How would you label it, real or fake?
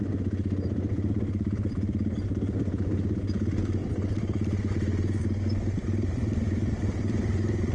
fake